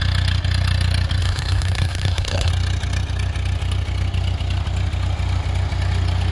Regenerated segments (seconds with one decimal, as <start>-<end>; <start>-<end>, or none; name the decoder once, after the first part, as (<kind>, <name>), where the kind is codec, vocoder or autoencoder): 1.2-2.5 (codec, SNAC)